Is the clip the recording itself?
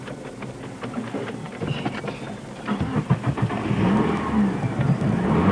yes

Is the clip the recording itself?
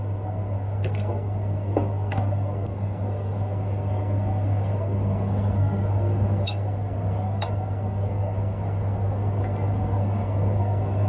no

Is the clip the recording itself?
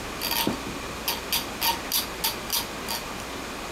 yes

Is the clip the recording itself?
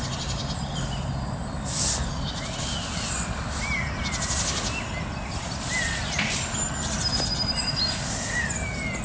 yes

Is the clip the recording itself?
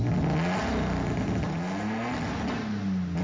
yes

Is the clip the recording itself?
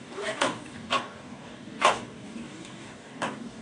no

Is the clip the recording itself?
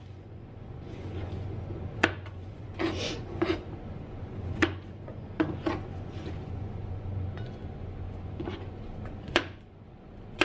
no